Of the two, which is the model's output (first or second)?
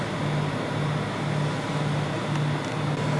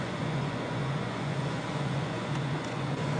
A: second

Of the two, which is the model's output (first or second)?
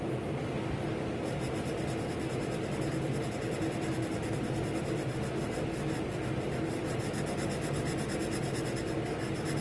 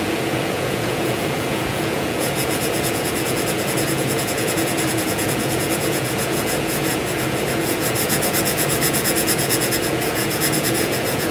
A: second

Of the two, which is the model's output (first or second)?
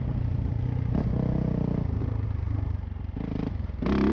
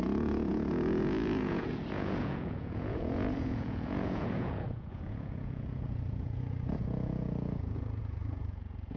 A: second